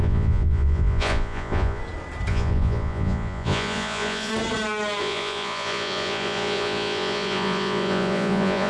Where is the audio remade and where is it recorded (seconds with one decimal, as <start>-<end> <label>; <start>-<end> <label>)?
0.0-1.8 remade; 1.8-2.3 recorded; 2.3-4.3 remade; 4.3-5.0 recorded; 5.0-8.7 remade